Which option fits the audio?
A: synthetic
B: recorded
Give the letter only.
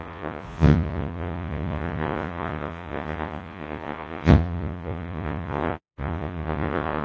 A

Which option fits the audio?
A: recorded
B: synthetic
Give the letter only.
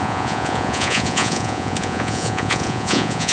B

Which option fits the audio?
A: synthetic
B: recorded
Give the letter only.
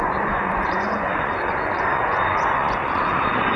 A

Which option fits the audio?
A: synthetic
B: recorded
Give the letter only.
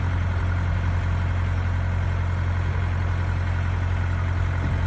B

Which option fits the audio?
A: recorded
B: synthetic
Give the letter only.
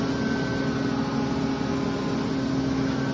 A